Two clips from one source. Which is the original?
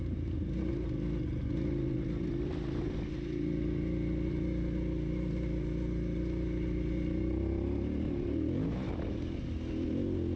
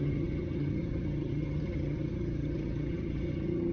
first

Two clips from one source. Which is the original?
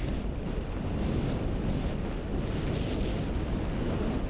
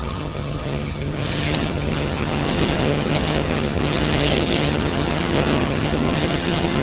first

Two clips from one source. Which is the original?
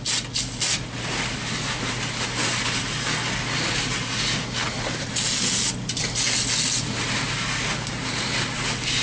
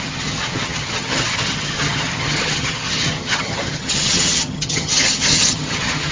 first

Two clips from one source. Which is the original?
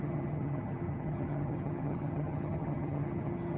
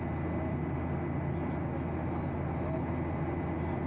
second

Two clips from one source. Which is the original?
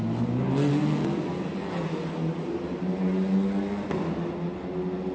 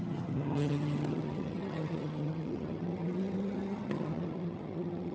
first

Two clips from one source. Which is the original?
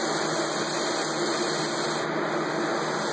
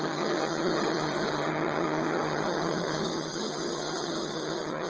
first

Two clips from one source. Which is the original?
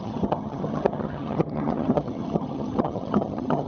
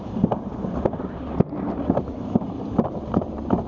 second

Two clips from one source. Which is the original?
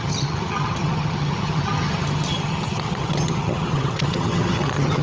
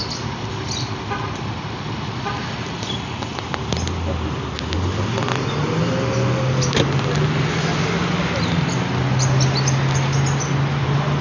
second